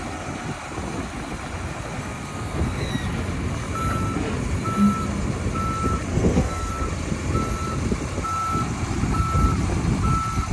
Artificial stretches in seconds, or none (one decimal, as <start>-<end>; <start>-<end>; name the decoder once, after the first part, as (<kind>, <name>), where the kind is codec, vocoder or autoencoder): 2.0-2.9 (codec, SNAC); 6.1-6.7